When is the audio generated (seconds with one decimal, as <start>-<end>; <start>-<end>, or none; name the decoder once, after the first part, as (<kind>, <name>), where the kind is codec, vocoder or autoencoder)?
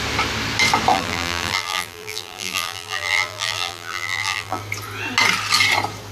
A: 0.9-4.6 (vocoder, BigVGAN v2)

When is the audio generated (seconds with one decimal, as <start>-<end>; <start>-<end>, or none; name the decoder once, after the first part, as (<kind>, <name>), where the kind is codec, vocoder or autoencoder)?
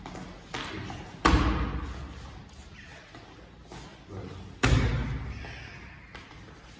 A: none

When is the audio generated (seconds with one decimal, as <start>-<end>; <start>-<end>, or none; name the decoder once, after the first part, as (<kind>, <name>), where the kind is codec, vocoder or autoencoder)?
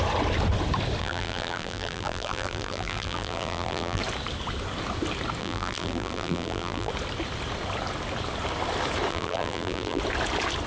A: 1.0-4.0 (vocoder, BigVGAN v2); 5.4-6.9; 9.1-10.0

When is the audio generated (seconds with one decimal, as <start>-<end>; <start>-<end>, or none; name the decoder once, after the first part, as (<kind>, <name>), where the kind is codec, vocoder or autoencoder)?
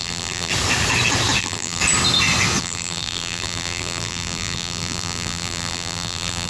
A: 0.0-0.5 (vocoder, BigVGAN v2); 1.4-1.8; 2.6-6.5